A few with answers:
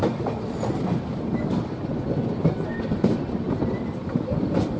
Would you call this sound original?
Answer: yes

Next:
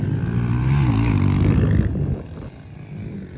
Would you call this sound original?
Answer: yes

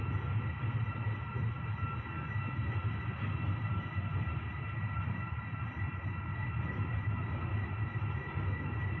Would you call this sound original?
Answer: yes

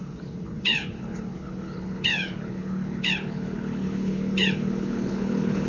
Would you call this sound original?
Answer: no